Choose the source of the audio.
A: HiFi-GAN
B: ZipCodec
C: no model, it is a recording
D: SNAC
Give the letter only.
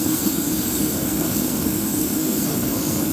D